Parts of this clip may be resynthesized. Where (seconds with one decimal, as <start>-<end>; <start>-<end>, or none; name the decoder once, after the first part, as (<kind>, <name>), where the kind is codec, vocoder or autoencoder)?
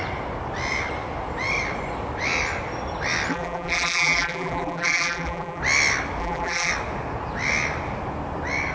3.3-5.6 (vocoder, BigVGAN v2); 6.2-6.7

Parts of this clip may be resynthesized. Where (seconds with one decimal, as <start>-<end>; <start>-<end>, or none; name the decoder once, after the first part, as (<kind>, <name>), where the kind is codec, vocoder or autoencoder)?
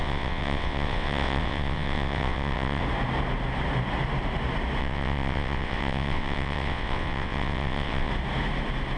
0.0-2.8 (vocoder, WaveNeXt); 4.8-8.1